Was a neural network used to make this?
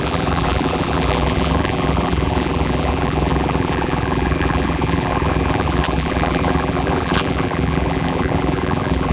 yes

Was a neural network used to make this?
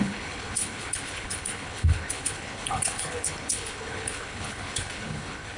yes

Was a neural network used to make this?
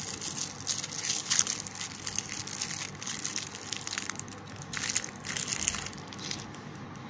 no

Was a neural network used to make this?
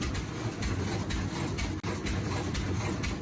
no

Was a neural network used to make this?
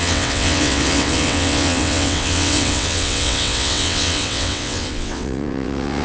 yes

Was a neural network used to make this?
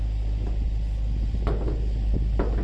no